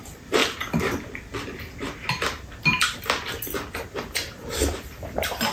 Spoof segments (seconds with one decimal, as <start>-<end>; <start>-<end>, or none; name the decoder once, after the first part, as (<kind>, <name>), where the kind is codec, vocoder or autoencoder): 0.0-0.4 (vocoder, BigVGAN v2); 3.7-5.5